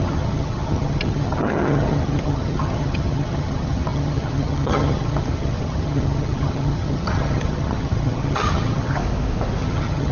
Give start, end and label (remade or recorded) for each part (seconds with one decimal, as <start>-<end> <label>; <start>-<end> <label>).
0.0-9.0 remade; 9.0-9.6 recorded; 9.6-10.1 remade